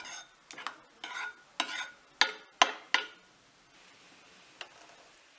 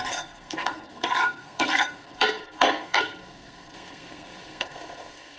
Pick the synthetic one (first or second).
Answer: second